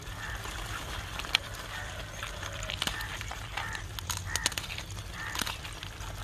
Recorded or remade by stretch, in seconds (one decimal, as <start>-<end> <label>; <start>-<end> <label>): 0.0-3.1 recorded; 3.1-3.9 remade; 3.9-6.2 recorded